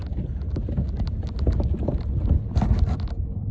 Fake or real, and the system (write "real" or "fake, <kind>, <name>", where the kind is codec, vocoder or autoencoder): real